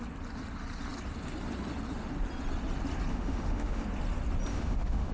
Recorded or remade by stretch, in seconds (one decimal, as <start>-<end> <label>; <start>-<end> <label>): 0.0-3.1 recorded; 3.1-3.8 remade; 3.8-4.5 recorded; 4.5-5.1 remade